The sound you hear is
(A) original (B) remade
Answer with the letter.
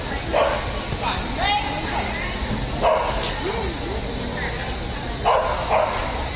A